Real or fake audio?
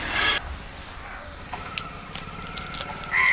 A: real